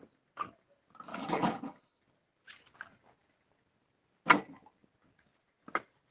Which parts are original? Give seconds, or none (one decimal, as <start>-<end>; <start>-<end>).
0.0-1.1; 2.0-6.1